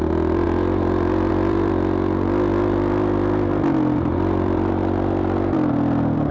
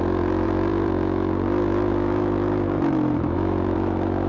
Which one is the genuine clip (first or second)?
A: first